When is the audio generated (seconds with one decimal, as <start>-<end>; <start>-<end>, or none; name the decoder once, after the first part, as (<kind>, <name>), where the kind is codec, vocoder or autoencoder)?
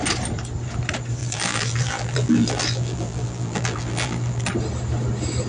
1.2-4.5 (vocoder, BigVGAN v2)